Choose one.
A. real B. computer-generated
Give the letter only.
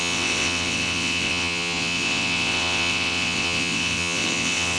B